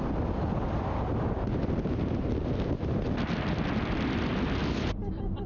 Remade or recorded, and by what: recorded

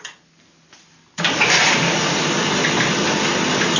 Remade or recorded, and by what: recorded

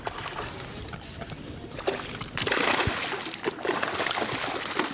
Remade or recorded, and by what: recorded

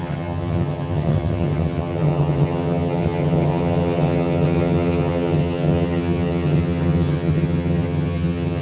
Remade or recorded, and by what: remade, vocoder, HiFi-GAN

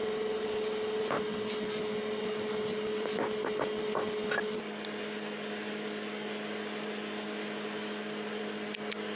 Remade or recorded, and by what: recorded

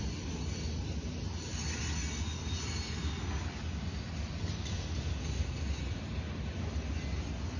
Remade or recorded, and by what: recorded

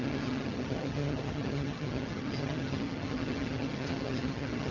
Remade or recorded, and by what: remade, vocoder, HiFi-GAN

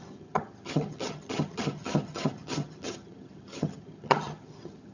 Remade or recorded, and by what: remade, vocoder, HiFi-GAN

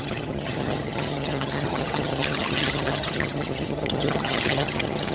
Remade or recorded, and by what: remade, vocoder, HiFi-GAN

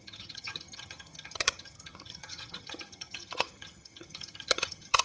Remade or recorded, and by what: remade, vocoder, HiFi-GAN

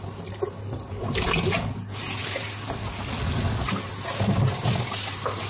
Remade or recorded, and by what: recorded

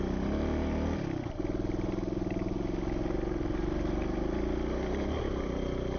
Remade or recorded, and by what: recorded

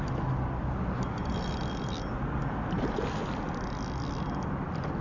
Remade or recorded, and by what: recorded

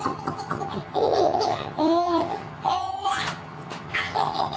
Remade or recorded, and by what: remade, vocoder, HiFi-GAN